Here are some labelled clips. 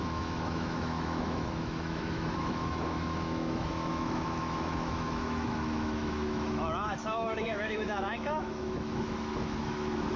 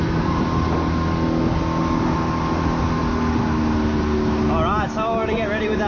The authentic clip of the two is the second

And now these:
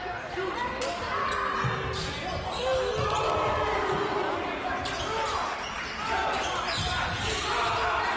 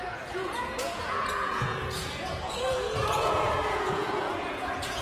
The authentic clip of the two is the first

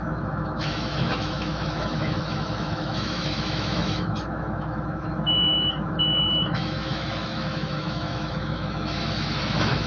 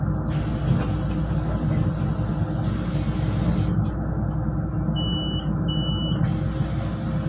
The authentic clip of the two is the second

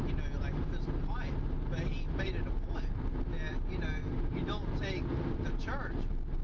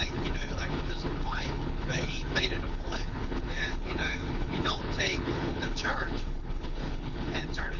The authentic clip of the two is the first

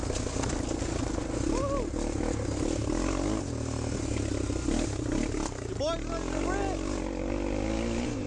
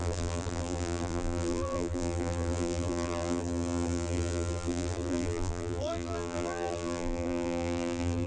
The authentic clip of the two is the first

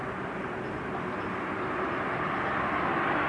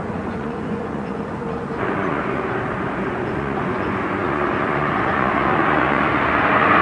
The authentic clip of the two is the first